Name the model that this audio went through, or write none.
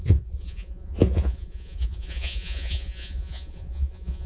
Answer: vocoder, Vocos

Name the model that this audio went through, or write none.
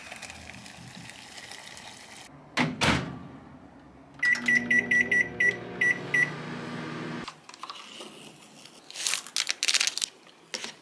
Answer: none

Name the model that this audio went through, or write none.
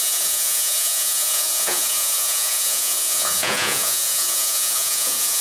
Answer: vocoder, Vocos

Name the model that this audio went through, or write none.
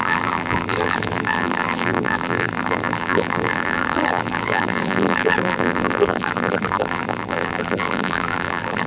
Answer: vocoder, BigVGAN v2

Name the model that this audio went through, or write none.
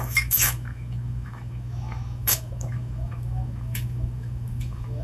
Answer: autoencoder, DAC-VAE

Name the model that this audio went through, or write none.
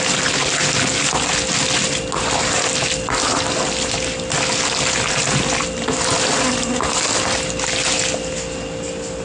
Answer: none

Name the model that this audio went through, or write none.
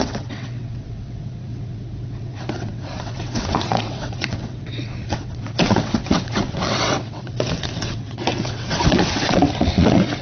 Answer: vocoder, WaveNeXt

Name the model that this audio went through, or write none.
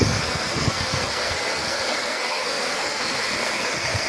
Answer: codec, SNAC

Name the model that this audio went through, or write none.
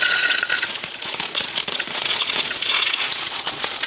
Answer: vocoder, Vocos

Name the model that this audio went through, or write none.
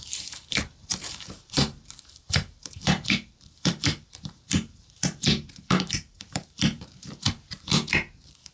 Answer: vocoder, BigVGAN v2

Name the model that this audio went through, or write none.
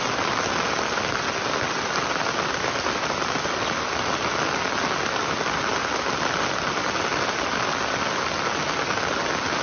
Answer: none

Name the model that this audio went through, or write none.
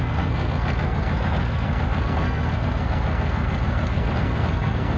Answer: codec, SNAC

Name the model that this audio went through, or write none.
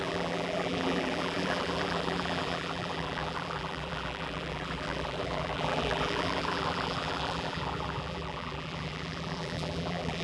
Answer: vocoder, BigVGAN v2